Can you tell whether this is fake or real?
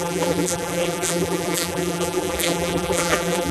fake